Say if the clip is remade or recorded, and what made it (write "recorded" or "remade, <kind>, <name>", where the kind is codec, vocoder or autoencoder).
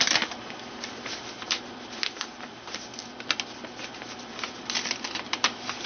recorded